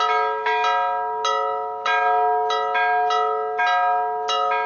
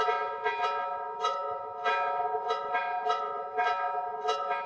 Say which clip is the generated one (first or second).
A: second